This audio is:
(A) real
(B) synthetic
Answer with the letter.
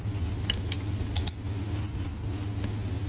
A